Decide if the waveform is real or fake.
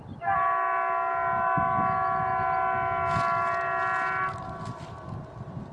real